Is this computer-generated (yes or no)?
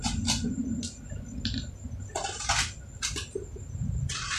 no